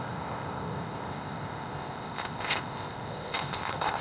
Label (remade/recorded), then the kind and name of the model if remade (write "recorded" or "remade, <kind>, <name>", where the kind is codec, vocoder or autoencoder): remade, codec, ZipCodec